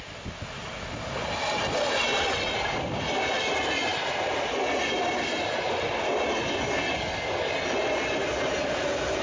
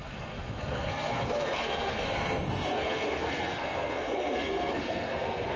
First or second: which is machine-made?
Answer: second